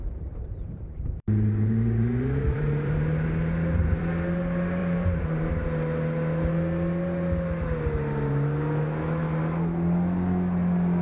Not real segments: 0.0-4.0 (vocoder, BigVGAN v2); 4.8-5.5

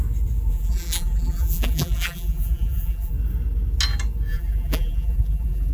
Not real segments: 0.5-3.1 (vocoder, BigVGAN v2); 4.3-5.7

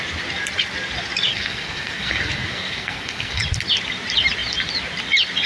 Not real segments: 1.3-3.4 (codec, SNAC)

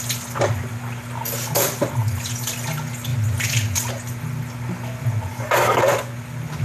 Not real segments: 5.3-5.8 (codec, DAC)

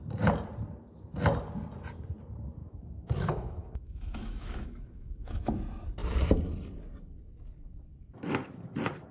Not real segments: 2.6-5.6 (autoencoder, DAC-VAE)

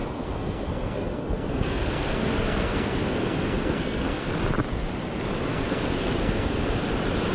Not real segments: 0.0-4.4 (codec, SNAC); 5.5-6.8

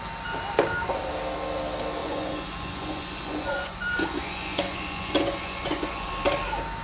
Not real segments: 2.0-6.1 (vocoder, Vocos)